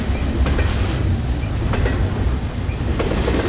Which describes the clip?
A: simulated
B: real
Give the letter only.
B